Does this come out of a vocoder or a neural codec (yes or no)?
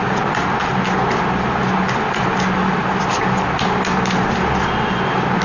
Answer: no